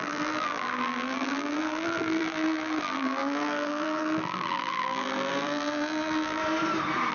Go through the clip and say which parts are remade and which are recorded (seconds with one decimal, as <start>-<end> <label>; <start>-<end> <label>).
0.0-6.4 remade; 6.4-7.1 recorded